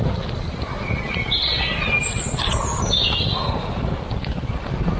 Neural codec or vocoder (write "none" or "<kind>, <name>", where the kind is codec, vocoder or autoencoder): none